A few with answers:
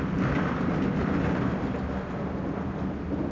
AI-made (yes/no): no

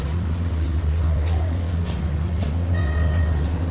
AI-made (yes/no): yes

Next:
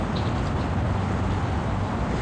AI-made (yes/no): no